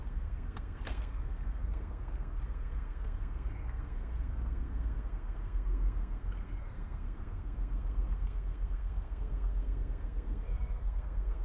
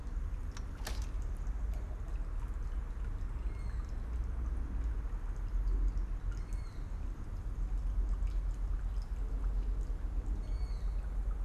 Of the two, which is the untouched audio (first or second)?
second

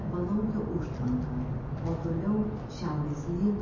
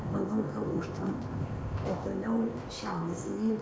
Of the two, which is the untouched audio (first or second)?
first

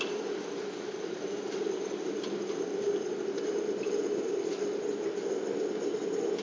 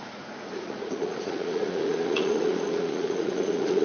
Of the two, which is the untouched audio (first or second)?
first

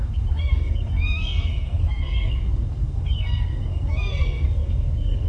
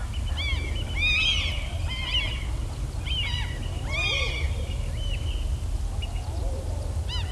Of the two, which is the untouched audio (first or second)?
second